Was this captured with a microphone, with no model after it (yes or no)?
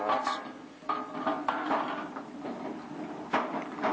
yes